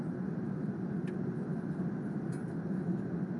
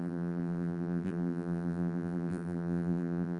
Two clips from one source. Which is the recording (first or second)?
first